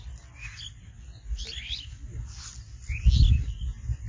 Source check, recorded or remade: recorded